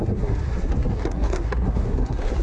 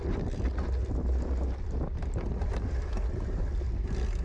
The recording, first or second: second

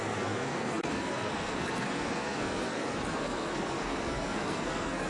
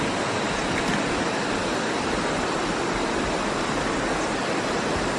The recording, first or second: second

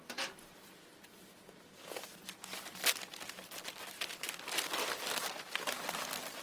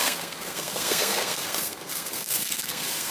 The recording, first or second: first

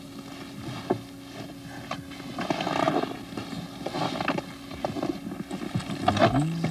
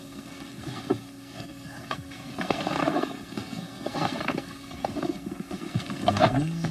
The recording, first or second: first